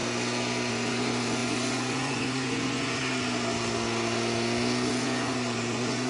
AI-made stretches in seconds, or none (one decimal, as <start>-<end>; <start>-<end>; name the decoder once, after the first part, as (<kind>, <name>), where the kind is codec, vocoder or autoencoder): 0.7-3.0 (vocoder, Vocos); 4.9-6.1